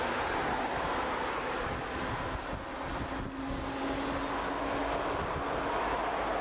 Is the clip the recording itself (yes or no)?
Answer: yes